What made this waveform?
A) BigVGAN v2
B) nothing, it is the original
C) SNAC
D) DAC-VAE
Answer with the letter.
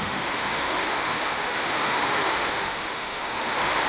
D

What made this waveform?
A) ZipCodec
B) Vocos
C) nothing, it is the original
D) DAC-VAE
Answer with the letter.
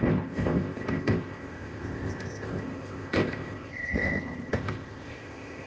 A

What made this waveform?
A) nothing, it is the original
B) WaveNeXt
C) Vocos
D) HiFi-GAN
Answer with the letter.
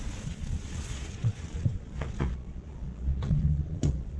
C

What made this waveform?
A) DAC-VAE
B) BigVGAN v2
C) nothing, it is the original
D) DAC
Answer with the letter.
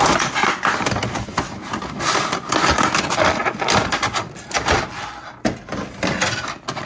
C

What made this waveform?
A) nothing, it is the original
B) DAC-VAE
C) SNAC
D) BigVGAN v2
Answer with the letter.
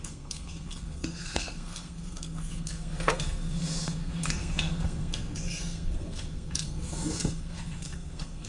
C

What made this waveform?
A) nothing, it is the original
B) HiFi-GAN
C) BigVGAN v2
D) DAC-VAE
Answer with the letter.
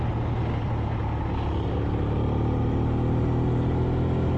A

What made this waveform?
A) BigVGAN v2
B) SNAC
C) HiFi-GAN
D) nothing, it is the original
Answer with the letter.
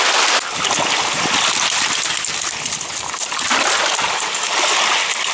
D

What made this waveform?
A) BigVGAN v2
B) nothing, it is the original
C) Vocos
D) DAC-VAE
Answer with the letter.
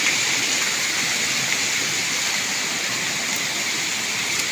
B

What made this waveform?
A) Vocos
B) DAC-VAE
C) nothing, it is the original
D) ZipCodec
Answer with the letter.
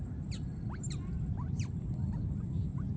C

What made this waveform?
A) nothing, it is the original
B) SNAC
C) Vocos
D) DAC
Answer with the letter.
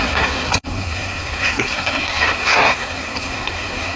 B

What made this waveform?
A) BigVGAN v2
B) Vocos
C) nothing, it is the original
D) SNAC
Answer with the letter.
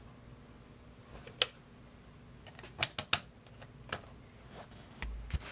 C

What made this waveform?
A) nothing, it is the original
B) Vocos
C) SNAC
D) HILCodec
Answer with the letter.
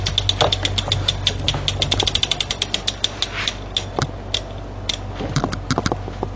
A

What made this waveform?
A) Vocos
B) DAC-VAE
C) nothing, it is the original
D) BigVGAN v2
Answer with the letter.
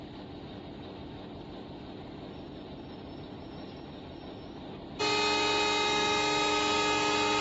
C